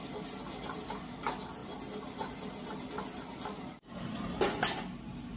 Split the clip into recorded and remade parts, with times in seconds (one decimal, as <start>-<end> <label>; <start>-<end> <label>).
0.0-5.4 recorded